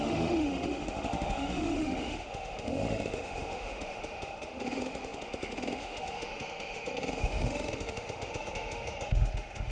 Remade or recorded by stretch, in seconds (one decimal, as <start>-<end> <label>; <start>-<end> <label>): 0.0-9.7 remade